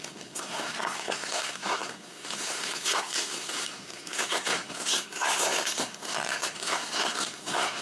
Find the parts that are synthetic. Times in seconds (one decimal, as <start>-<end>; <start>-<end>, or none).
0.0-7.8